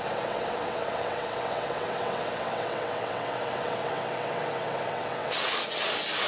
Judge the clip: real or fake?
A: fake